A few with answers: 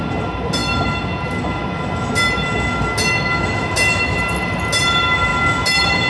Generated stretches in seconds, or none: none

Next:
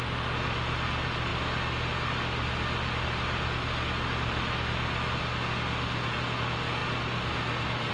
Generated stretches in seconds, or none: none